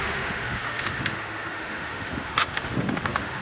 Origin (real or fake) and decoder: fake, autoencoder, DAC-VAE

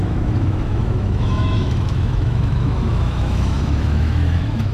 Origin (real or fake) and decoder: fake, autoencoder, DAC-VAE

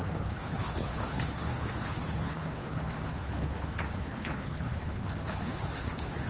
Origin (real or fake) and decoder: fake, codec, HILCodec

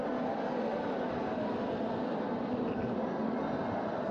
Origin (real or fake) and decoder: real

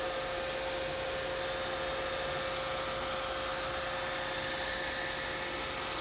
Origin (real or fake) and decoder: real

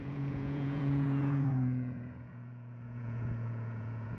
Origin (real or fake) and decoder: fake, vocoder, Vocos